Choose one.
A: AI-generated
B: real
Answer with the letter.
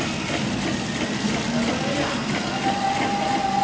B